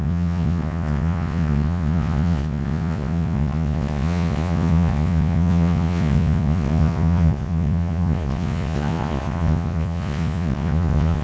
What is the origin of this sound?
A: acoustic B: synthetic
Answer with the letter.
B